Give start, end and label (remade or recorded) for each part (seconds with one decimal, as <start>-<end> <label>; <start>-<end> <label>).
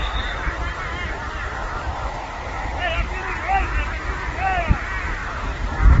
0.0-1.6 recorded; 1.6-2.8 remade; 2.8-5.2 recorded; 5.2-6.0 remade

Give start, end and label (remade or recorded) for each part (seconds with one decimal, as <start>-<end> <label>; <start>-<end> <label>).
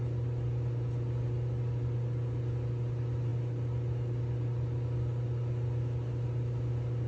0.0-7.1 recorded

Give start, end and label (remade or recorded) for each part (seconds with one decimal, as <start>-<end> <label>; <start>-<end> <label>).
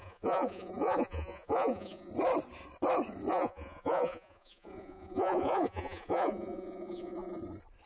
0.0-2.1 remade; 2.1-3.3 recorded; 3.3-7.4 remade; 7.4-7.9 recorded